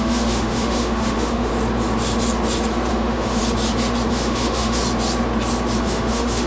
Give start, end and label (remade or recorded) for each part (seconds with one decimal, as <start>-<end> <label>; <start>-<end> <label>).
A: 0.0-1.5 remade; 1.5-2.9 recorded; 2.9-3.4 remade; 3.4-4.1 recorded; 4.1-4.8 remade; 4.8-5.8 recorded; 5.8-6.5 remade